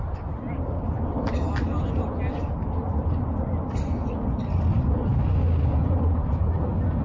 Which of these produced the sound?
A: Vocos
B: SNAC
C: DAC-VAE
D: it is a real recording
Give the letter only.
D